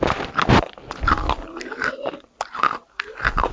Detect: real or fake real